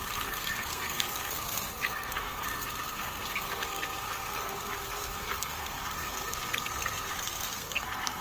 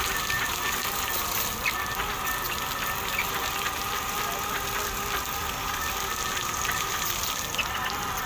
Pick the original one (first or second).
second